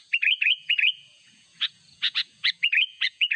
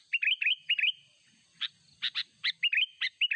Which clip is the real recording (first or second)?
second